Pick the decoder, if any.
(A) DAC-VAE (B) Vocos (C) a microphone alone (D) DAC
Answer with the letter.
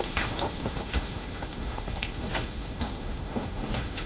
A